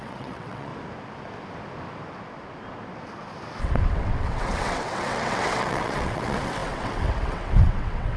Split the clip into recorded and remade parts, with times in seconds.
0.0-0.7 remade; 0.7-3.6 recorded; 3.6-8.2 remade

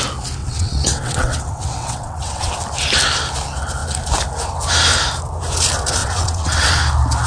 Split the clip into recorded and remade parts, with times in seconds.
0.0-0.4 recorded; 0.4-2.5 remade; 2.5-6.0 recorded; 6.0-6.8 remade; 6.8-7.3 recorded

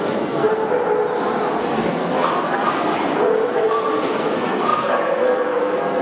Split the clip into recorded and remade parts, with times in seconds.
0.0-0.5 remade; 0.5-1.6 recorded; 1.6-2.7 remade; 2.7-3.5 recorded; 3.5-6.0 remade

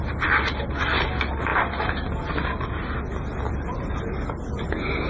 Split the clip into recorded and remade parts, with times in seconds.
0.0-5.1 recorded

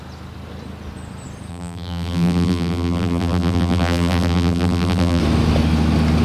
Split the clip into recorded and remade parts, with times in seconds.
0.0-1.5 recorded; 1.5-5.2 remade; 5.2-6.2 recorded

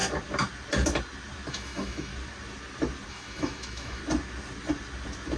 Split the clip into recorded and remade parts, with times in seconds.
0.0-1.5 recorded; 1.5-2.1 remade; 2.1-3.1 recorded; 3.1-4.0 remade; 4.0-5.4 recorded

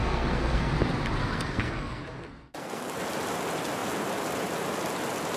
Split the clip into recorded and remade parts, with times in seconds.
0.0-0.7 remade; 0.7-1.2 recorded; 1.2-2.9 remade; 2.9-5.4 recorded

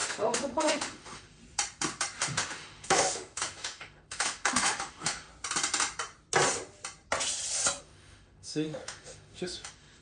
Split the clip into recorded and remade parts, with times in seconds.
0.0-1.4 remade; 1.4-2.2 recorded; 2.2-5.3 remade; 5.3-7.8 recorded; 7.8-10.0 remade